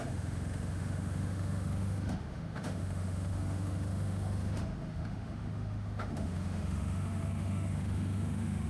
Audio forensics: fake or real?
fake